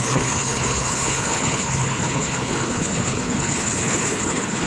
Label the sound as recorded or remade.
remade